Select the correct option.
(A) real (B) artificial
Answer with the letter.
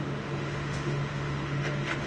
B